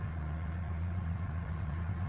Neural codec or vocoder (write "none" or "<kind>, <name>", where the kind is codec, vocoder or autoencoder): vocoder, Vocos